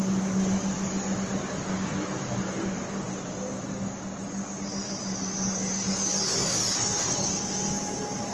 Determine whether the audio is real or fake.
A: real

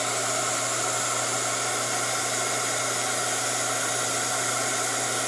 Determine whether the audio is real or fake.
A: real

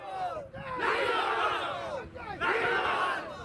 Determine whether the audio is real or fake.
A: real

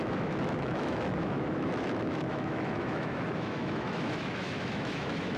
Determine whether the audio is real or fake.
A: fake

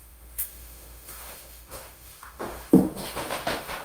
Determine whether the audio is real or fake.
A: fake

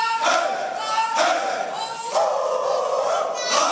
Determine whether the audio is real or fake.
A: real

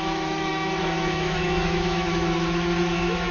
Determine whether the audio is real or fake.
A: fake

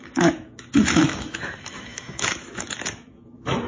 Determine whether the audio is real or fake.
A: fake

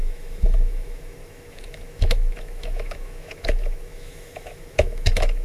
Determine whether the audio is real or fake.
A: fake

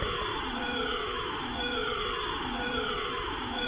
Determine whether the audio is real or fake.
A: fake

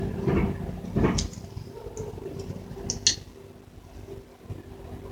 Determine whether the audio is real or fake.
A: real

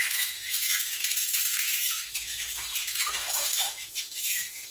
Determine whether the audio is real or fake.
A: fake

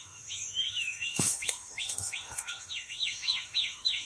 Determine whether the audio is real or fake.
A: fake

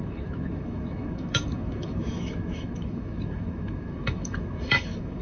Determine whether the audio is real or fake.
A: fake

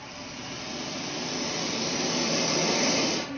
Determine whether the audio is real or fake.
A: real